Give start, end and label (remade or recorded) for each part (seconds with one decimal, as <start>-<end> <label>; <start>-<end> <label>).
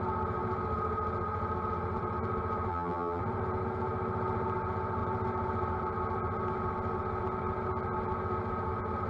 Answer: 0.0-2.7 recorded; 2.7-3.2 remade; 3.2-9.1 recorded